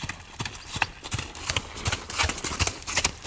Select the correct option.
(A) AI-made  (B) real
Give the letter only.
A